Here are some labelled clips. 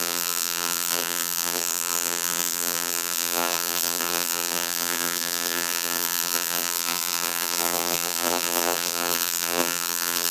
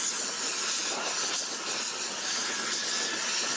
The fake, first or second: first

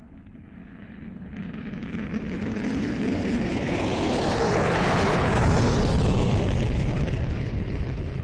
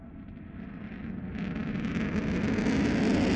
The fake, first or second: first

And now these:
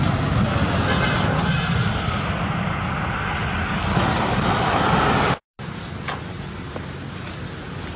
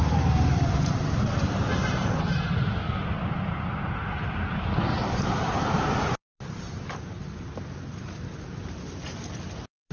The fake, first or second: second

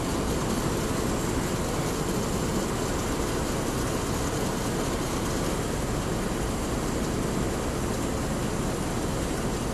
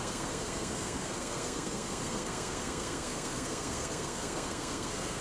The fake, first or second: second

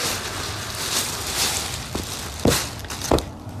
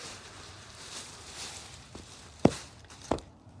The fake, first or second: second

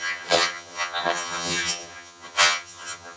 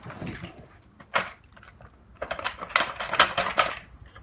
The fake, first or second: first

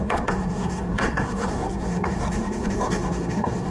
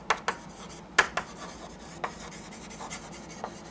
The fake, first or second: first